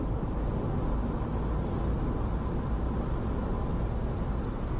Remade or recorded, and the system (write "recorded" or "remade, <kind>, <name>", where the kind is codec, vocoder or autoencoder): recorded